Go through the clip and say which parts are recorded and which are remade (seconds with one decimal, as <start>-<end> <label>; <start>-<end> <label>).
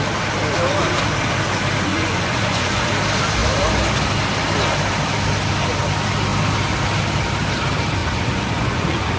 0.0-1.9 recorded; 1.9-2.9 remade; 2.9-8.0 recorded; 8.0-9.2 remade